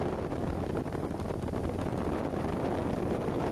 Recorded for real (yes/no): yes